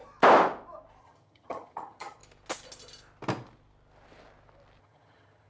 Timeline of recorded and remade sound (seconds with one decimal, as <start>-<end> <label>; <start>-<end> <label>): 0.0-1.0 recorded; 1.0-2.2 remade; 2.2-4.8 recorded; 4.8-5.5 remade